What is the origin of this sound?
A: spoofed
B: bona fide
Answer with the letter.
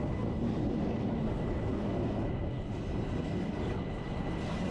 B